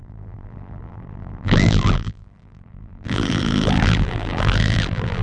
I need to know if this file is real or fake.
fake